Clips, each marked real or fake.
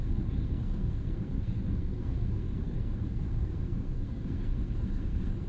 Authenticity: fake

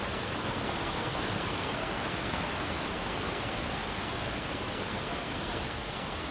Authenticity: fake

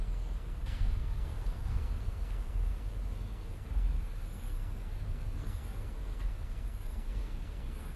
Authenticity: fake